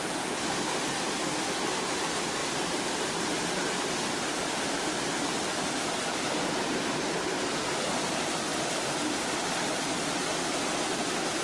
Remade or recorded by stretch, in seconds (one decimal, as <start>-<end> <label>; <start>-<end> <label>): 0.0-11.4 recorded